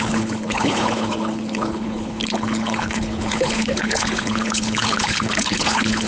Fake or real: fake